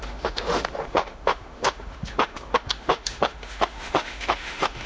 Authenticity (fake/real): fake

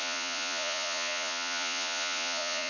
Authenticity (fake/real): fake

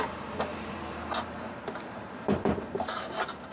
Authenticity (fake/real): fake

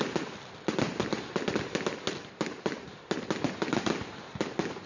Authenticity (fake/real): real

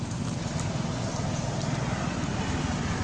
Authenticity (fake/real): real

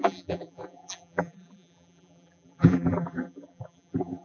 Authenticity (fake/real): fake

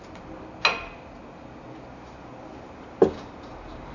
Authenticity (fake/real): real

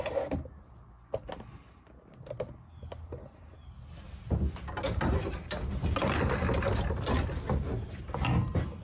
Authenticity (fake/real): real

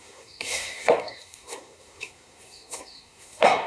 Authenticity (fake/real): fake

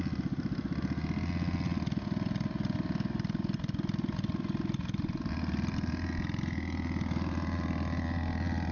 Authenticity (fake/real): real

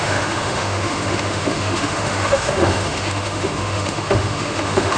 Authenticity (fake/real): fake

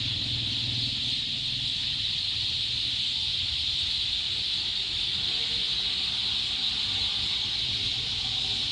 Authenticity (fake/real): real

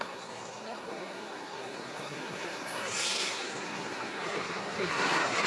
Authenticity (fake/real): fake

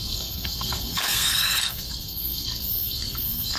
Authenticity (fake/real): fake